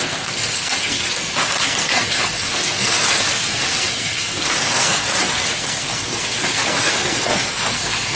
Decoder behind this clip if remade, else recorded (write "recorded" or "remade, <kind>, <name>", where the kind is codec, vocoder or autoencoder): remade, codec, SNAC